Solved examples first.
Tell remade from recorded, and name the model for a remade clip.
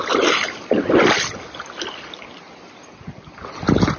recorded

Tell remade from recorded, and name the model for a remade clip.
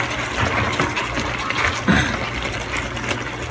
recorded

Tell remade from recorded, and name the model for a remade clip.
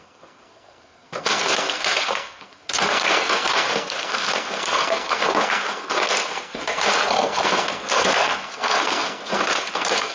remade, codec, SNAC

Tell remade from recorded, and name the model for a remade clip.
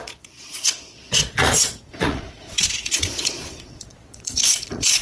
remade, vocoder, Vocos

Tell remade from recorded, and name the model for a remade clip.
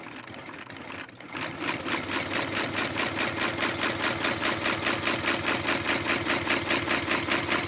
recorded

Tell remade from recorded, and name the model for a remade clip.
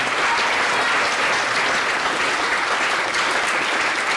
recorded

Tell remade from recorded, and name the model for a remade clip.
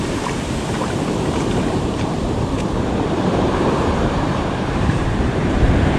remade, vocoder, BigVGAN v2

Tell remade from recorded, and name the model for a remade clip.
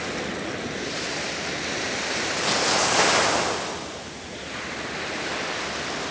recorded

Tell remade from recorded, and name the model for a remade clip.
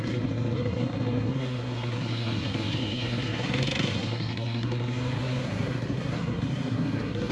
remade, codec, SNAC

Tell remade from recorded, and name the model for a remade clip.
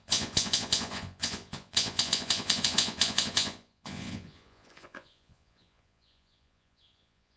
remade, vocoder, Vocos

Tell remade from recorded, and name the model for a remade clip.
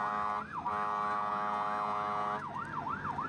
recorded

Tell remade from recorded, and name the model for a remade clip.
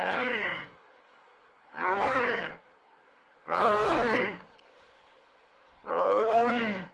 remade, codec, SNAC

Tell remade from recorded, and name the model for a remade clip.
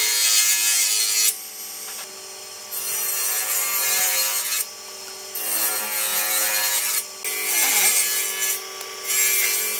recorded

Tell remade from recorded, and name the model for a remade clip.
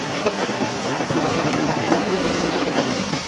remade, codec, SNAC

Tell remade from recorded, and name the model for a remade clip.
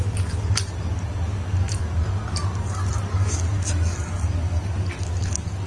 recorded